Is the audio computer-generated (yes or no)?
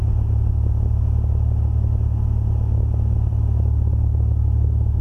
no